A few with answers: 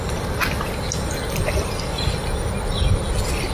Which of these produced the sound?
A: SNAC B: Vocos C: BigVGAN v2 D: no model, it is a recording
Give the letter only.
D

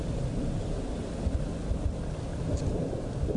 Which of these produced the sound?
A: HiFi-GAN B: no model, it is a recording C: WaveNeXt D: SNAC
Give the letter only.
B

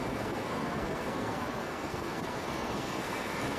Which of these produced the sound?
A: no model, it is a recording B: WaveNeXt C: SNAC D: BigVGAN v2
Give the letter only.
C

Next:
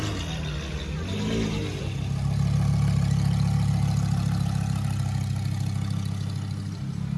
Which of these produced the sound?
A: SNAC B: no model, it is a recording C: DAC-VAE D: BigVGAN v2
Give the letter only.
B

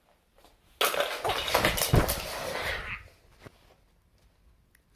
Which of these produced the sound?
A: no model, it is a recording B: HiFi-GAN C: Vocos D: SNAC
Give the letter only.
A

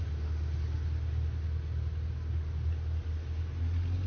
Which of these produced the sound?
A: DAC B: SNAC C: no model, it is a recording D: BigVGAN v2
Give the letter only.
C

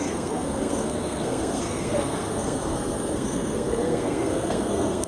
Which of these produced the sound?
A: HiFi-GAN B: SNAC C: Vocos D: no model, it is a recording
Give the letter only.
B